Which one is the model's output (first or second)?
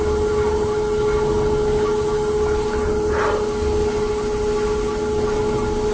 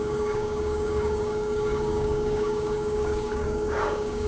second